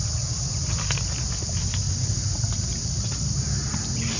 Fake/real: real